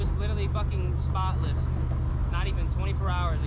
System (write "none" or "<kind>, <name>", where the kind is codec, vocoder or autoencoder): none